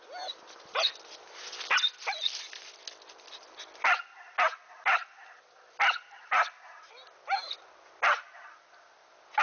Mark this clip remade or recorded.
recorded